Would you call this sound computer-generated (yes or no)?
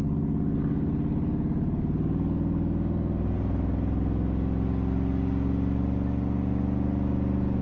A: no